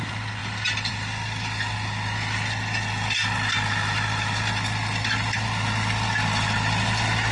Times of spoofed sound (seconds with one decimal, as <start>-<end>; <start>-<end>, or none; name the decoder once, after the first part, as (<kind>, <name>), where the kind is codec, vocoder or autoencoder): none